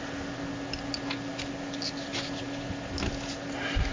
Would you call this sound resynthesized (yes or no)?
no